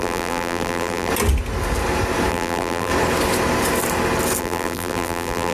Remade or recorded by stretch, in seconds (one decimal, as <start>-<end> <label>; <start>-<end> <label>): 0.0-1.1 remade; 1.1-2.3 recorded; 2.3-2.9 remade; 2.9-4.4 recorded; 4.4-5.5 remade